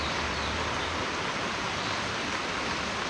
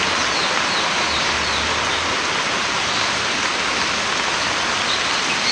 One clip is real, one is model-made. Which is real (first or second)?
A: second